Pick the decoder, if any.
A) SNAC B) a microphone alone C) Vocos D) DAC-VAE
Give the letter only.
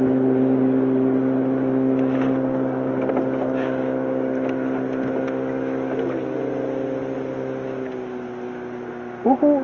B